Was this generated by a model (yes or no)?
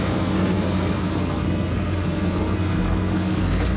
yes